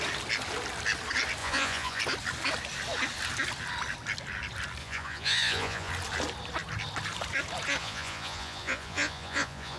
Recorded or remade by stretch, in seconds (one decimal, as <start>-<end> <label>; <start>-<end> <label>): 0.0-1.4 recorded; 1.4-2.0 remade; 2.0-4.8 recorded; 4.8-5.9 remade; 5.9-7.8 recorded; 7.8-9.8 remade